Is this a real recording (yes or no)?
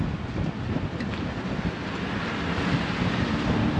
yes